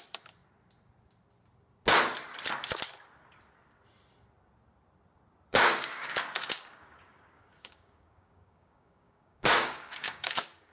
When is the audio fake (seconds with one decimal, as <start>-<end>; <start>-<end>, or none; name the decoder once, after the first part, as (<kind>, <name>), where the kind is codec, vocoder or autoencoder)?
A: 5.5-10.7 (codec, DAC)